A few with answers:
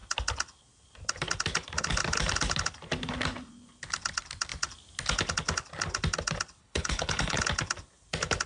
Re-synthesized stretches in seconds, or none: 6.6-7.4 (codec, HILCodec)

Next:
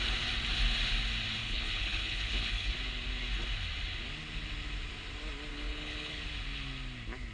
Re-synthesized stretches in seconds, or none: 1.4-2.7 (codec, HILCodec); 5.5-6.2